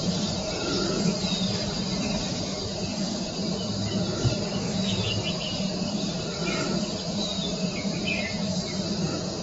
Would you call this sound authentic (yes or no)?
yes